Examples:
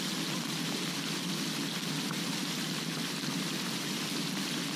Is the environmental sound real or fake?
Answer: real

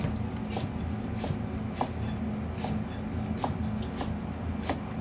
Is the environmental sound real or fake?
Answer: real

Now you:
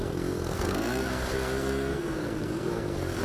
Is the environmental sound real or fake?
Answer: fake